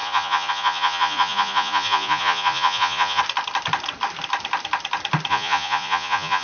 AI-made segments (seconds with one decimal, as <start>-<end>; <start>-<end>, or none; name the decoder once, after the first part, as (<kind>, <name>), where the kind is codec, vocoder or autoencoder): 0.0-3.2 (vocoder, Vocos); 5.3-6.4